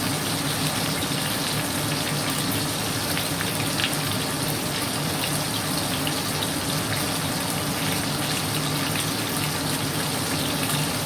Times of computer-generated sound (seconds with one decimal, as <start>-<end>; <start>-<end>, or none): none